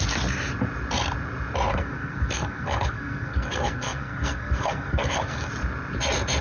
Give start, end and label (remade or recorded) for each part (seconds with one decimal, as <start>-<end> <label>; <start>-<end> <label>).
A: 0.0-1.7 recorded; 1.7-5.5 remade; 5.5-6.4 recorded